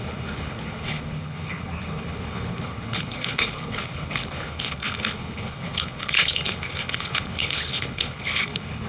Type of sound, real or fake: fake